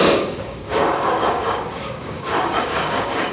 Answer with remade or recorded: remade